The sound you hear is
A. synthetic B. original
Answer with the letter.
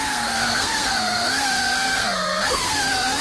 A